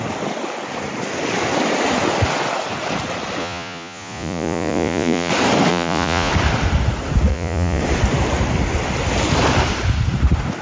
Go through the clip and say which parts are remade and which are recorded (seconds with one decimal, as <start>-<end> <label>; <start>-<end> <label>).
0.0-3.4 recorded; 3.4-5.3 remade; 5.3-5.7 recorded; 5.7-6.3 remade; 6.3-7.3 recorded; 7.3-7.8 remade; 7.8-10.6 recorded